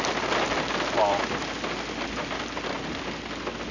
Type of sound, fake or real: real